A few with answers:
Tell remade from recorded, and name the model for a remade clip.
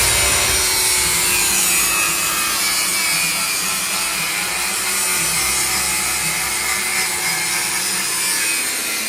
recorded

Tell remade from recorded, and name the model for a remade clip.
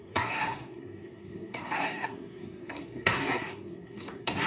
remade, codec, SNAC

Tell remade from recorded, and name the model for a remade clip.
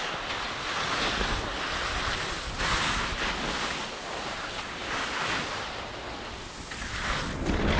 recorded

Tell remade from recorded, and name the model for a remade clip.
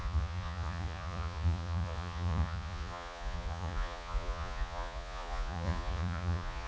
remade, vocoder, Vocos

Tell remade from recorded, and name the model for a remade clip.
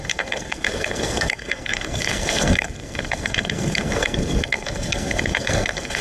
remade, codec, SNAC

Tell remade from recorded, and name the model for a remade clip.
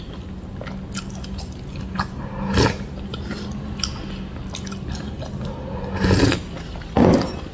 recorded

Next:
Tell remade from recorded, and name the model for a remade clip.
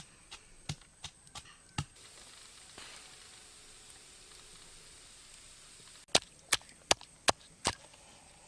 recorded